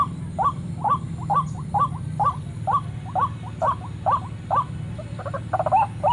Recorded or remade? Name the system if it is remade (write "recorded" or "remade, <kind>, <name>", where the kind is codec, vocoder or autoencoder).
recorded